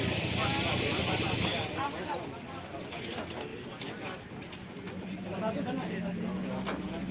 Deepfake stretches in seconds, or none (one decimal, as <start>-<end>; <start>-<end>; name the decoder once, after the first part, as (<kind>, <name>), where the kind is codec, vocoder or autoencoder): none